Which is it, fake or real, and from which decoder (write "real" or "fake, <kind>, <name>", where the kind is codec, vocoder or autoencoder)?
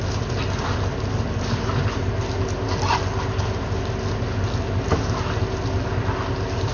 real